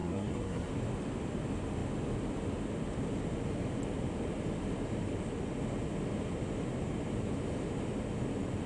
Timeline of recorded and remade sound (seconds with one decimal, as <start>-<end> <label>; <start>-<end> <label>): 0.0-0.7 remade; 0.7-8.7 recorded